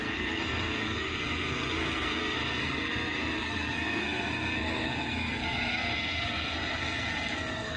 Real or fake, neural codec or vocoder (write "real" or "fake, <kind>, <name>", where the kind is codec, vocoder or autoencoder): fake, codec, SNAC